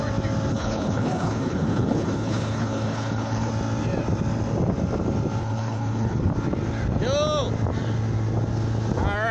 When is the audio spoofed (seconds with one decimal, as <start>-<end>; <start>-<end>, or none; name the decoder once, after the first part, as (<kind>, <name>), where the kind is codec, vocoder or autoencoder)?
0.5-3.5 (codec, HILCodec); 5.4-6.3